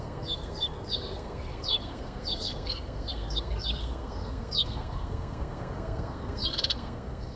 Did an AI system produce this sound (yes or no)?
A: yes